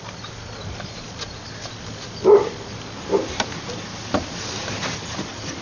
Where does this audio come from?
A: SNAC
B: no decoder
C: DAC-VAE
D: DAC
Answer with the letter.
B